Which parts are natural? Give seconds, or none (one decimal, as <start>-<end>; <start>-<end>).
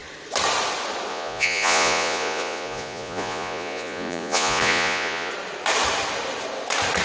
0.0-1.1; 5.3-7.0